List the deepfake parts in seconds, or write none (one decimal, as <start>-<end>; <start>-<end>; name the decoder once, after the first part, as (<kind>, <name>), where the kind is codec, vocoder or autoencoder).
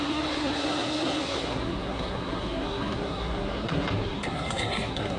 0.0-5.2 (codec, SNAC)